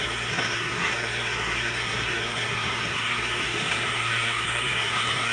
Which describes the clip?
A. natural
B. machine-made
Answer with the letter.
B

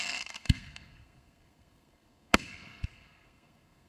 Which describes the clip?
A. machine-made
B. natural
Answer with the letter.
A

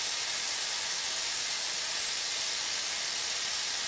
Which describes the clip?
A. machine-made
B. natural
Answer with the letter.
B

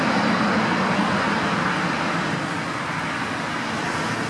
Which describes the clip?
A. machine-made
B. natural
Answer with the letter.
B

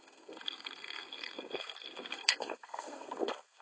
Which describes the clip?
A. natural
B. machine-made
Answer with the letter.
B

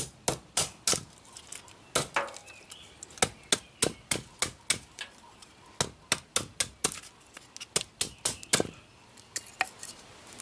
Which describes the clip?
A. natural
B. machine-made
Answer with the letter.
A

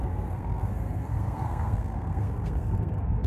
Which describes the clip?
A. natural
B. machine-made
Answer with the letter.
B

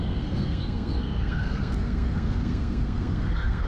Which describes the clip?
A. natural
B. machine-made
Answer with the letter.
B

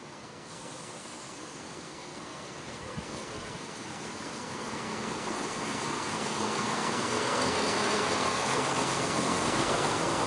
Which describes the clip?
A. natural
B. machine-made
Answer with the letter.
B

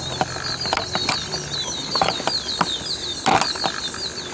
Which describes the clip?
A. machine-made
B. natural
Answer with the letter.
B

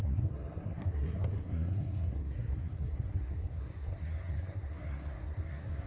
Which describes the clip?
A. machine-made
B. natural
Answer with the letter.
A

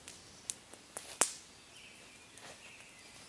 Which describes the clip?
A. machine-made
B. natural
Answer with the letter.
B